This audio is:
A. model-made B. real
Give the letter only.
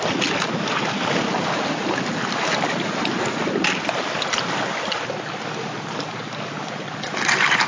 B